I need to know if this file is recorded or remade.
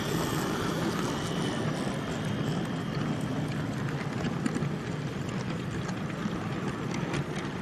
recorded